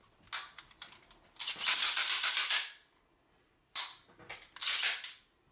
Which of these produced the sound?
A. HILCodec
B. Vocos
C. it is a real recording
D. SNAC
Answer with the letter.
C